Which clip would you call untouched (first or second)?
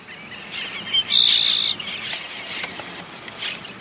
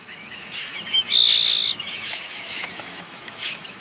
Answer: first